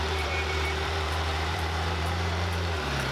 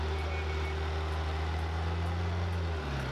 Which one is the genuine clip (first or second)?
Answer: second